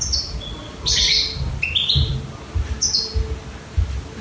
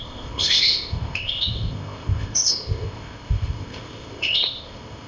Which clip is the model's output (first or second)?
second